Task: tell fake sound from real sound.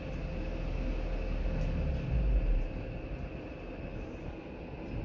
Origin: real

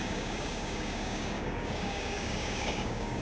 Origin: fake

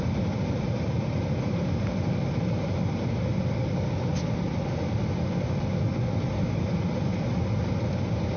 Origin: real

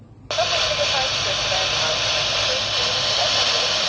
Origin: real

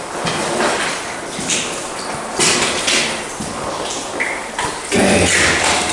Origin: real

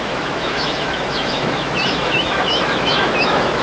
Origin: fake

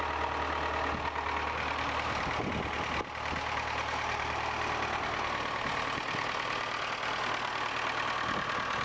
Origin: real